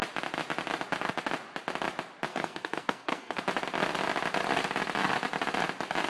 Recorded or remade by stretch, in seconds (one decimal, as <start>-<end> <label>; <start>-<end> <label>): 0.0-2.3 recorded; 2.3-3.4 remade; 3.4-6.1 recorded